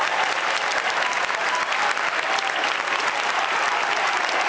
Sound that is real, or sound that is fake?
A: real